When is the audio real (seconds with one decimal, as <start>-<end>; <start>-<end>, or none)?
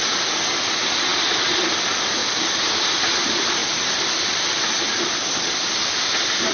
0.0-2.2; 2.8-3.6; 4.8-6.5